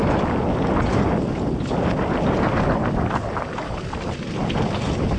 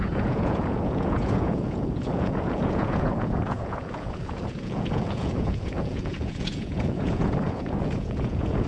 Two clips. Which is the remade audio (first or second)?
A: second